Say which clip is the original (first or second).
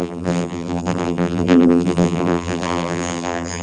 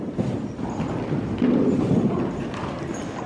second